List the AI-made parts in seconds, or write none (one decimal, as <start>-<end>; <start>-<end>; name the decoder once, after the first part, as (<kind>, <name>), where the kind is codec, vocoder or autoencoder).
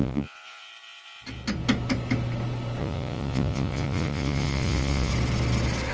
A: 0.0-0.7 (vocoder, Vocos); 2.8-5.1